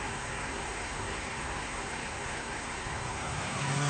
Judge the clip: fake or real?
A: fake